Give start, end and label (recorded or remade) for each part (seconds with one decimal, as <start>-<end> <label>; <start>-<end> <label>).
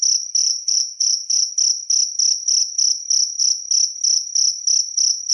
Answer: 0.0-0.4 recorded; 0.4-1.5 remade; 1.5-5.3 recorded